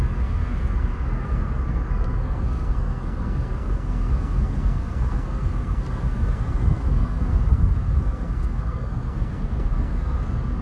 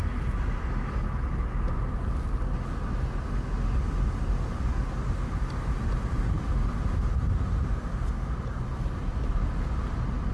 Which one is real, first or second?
second